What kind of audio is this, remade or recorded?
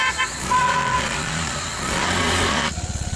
remade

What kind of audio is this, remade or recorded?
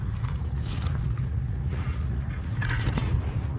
remade